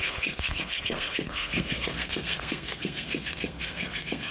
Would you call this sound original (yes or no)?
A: no